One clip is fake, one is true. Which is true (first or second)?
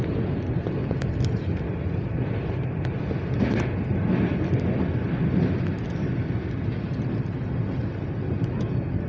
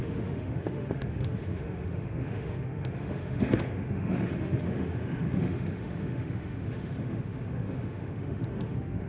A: first